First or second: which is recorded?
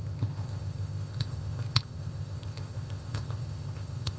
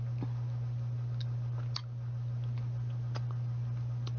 second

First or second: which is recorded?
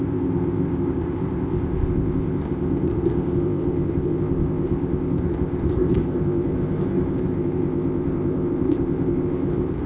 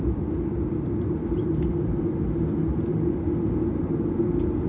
second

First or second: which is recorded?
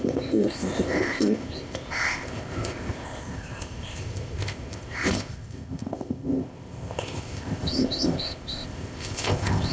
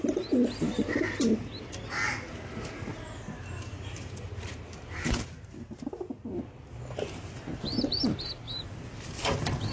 second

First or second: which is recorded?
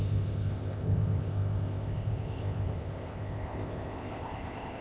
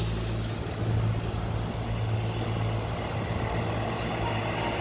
second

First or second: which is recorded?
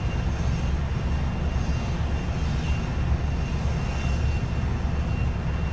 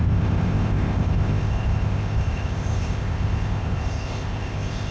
first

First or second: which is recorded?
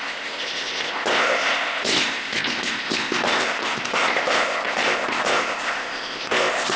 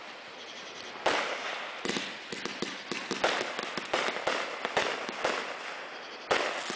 second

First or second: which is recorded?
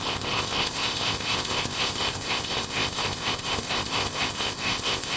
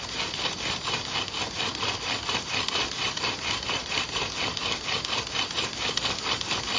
second